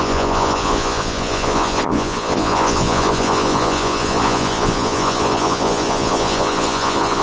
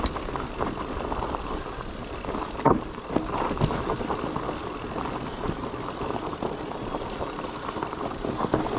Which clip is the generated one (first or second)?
first